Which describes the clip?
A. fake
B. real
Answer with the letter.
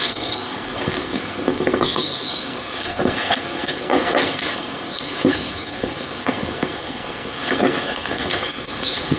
A